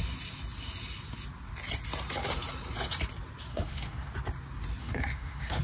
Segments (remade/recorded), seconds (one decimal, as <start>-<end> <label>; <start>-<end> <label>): 0.0-3.5 recorded; 3.5-4.1 remade; 4.1-4.8 recorded; 4.8-5.6 remade